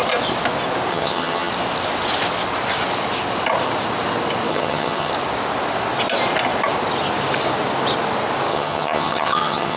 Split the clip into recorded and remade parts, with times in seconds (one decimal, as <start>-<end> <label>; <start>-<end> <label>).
0.0-0.9 recorded; 0.9-1.5 remade; 1.5-4.5 recorded; 4.5-5.1 remade; 5.1-8.5 recorded; 8.5-9.8 remade